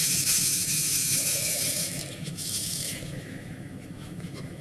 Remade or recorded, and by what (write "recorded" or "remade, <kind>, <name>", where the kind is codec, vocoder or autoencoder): remade, autoencoder, DAC-VAE